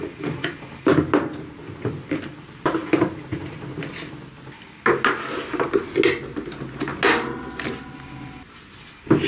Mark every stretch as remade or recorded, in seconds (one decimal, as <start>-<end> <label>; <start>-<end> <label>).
0.0-9.3 recorded